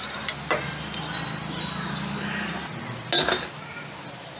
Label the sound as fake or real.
real